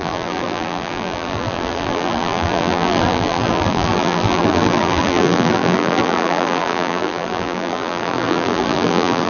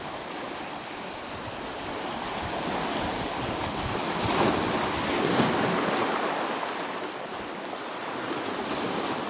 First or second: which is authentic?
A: second